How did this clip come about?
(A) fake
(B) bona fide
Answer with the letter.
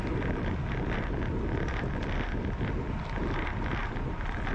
B